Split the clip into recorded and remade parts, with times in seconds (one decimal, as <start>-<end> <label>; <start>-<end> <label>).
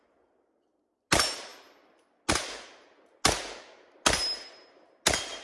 0.0-5.4 recorded